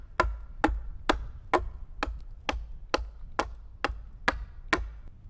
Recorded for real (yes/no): yes